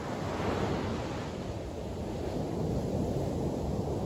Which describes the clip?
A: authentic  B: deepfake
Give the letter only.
A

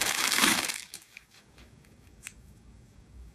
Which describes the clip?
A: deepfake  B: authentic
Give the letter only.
A